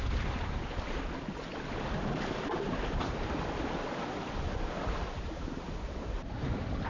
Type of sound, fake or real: real